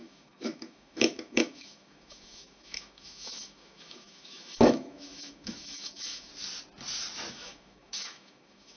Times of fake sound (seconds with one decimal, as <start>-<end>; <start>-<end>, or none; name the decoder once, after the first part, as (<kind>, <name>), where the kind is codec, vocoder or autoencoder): 0.0-6.3 (autoencoder, DAC-VAE); 7.3-8.8